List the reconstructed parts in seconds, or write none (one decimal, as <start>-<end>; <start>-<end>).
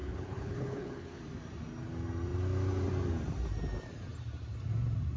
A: 0.0-1.2